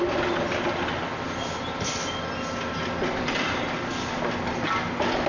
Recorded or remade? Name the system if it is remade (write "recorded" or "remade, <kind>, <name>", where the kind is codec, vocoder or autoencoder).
recorded